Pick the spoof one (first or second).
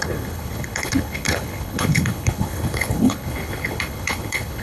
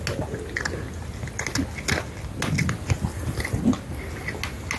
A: first